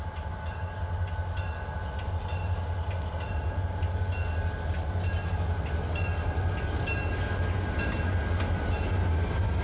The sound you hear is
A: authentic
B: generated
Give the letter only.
A